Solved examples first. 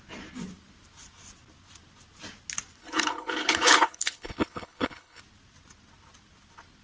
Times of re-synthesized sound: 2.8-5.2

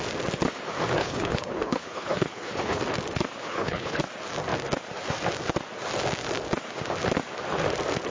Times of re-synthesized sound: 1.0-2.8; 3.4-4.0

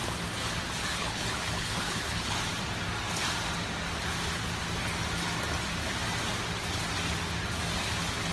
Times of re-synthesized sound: 0.9-2.4